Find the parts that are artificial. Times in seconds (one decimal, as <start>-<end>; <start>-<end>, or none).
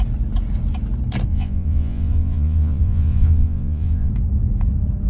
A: 1.3-4.1